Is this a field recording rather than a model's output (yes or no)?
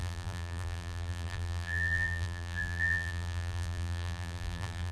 no